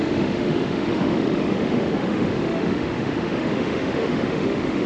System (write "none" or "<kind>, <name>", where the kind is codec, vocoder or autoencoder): autoencoder, DAC-VAE